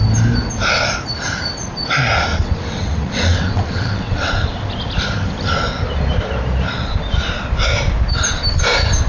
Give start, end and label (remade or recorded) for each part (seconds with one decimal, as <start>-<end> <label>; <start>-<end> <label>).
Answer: 0.0-2.3 recorded; 2.3-4.3 remade; 4.3-9.1 recorded